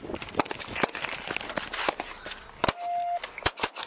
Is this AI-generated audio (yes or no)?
no